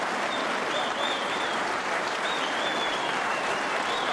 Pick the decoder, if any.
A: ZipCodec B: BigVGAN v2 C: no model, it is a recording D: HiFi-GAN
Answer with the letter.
B